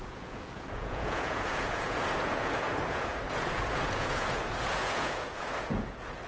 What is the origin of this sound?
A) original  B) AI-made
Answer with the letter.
B